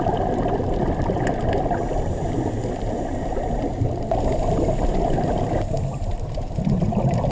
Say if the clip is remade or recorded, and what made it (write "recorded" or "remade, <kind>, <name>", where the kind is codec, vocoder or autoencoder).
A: recorded